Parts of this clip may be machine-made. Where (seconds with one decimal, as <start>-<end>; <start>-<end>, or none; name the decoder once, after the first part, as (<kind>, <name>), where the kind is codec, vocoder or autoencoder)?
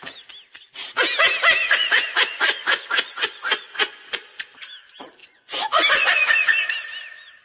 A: 1.6-4.2 (vocoder, Vocos); 5.2-6.7